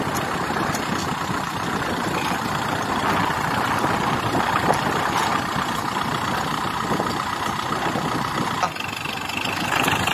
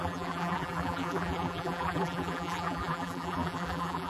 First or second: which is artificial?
second